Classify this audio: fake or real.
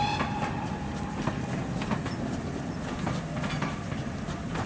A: real